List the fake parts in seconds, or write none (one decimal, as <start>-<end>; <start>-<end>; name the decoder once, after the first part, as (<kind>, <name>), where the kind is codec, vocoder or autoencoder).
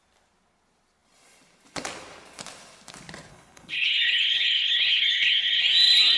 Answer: 3.3-5.6 (codec, HILCodec)